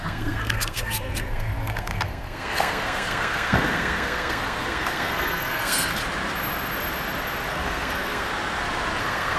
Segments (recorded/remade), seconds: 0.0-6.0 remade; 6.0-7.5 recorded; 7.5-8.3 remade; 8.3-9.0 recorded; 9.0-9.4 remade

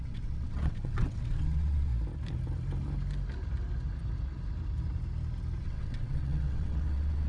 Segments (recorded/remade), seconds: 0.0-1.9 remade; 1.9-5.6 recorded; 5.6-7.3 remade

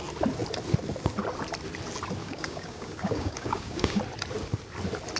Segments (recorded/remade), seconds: 0.0-2.2 recorded; 2.2-4.0 remade; 4.0-5.2 recorded